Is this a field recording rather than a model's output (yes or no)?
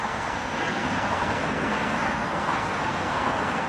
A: no